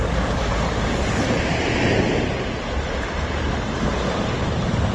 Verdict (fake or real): fake